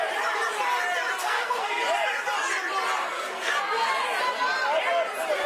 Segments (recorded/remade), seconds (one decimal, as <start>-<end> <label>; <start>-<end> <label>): 0.0-1.2 recorded; 1.2-1.8 remade; 1.8-3.0 recorded; 3.0-3.9 remade; 3.9-5.5 recorded